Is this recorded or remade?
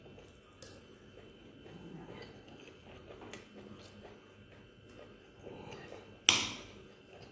recorded